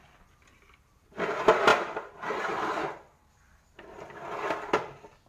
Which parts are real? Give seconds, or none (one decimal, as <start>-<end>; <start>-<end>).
0.0-5.3